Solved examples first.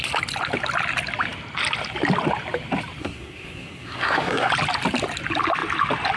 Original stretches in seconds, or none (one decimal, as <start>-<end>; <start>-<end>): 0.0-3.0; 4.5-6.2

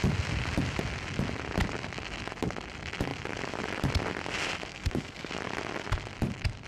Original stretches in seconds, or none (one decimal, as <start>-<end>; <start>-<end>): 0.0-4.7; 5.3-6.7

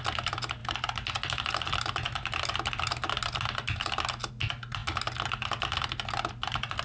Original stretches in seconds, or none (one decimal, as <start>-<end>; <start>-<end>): 0.0-6.8